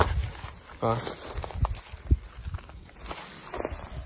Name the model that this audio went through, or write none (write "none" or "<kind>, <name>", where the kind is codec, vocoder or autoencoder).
none